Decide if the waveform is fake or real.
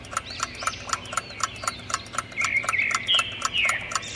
real